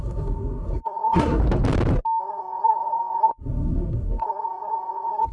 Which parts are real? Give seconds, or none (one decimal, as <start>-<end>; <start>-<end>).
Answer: 1.4-2.2